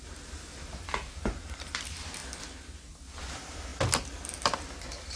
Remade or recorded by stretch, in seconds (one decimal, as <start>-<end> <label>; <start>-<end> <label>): 0.0-2.2 remade; 2.2-2.9 recorded; 2.9-3.7 remade; 3.7-4.8 recorded; 4.8-5.2 remade